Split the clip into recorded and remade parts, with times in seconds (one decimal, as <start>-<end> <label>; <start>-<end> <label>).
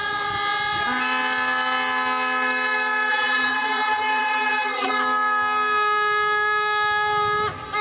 0.0-3.1 recorded; 3.1-4.9 remade; 4.9-7.8 recorded